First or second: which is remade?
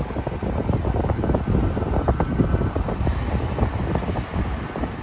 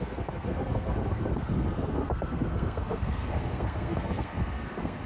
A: second